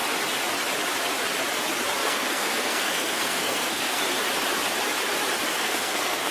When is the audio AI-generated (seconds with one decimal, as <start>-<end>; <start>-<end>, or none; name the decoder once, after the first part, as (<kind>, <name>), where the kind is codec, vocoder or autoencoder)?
2.0-4.0 (codec, SNAC); 5.5-6.3